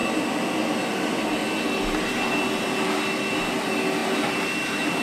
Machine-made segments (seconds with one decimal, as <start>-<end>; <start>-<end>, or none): none